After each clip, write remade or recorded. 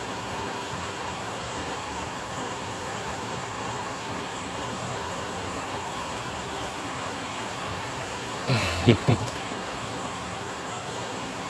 remade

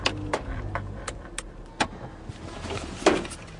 recorded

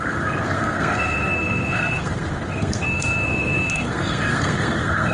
remade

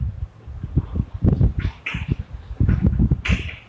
recorded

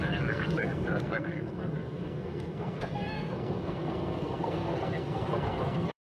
remade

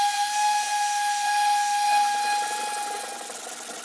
recorded